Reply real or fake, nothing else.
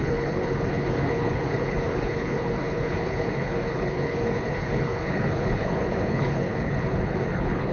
fake